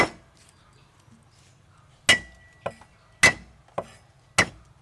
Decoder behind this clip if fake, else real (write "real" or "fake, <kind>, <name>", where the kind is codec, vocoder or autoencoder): real